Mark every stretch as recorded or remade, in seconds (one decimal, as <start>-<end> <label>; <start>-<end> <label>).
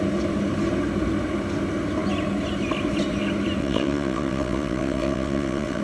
0.0-3.6 recorded; 3.6-5.8 remade